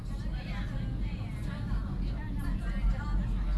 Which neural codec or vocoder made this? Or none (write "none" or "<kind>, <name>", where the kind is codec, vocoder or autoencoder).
none